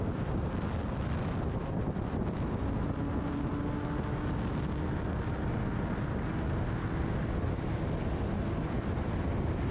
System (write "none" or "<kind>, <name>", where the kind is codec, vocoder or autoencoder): none